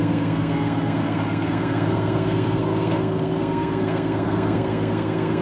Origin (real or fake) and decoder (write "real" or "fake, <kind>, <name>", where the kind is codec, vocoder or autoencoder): fake, codec, SNAC